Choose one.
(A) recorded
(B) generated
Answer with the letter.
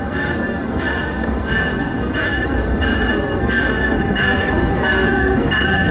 B